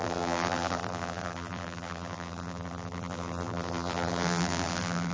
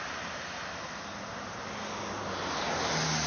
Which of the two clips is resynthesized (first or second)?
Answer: first